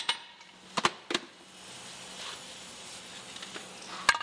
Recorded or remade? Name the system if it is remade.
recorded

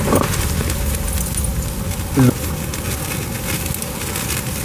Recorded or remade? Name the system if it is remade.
recorded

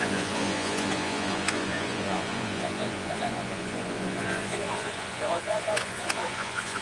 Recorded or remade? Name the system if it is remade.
remade, vocoder, Vocos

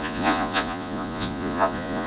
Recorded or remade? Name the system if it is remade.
remade, vocoder, Vocos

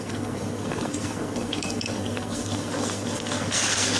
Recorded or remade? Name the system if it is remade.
remade, codec, SNAC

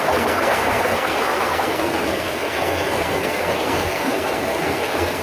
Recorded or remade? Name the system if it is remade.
remade, codec, SNAC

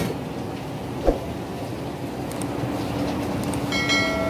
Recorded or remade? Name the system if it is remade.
recorded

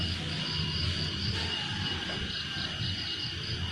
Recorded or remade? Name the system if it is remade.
recorded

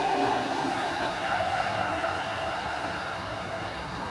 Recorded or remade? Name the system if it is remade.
remade, codec, SNAC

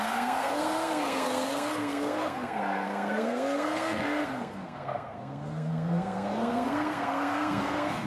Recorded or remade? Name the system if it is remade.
remade, codec, SNAC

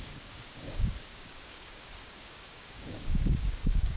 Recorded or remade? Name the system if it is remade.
remade, codec, DAC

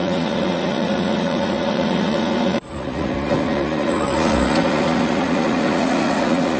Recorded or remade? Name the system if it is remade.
remade, vocoder, Vocos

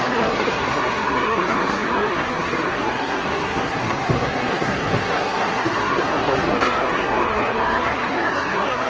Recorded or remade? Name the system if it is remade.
remade, codec, SNAC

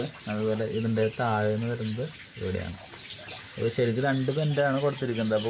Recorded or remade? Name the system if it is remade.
recorded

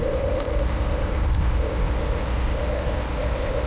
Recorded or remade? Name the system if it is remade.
remade, codec, ZipCodec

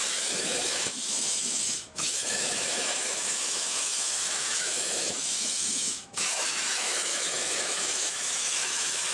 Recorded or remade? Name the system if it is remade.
remade, autoencoder, DAC-VAE